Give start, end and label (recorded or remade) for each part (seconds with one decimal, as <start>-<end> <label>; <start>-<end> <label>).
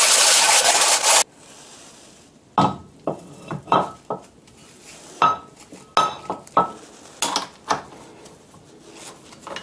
0.0-2.8 recorded; 2.8-4.1 remade; 4.1-4.8 recorded; 4.8-5.8 remade; 5.8-9.6 recorded